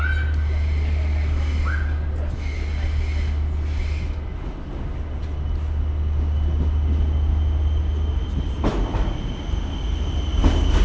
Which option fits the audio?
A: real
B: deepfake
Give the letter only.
A